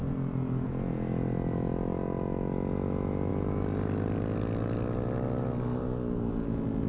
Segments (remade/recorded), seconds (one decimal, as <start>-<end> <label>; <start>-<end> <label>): 0.0-6.9 recorded